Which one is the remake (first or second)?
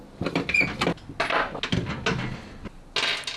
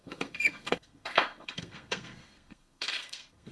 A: second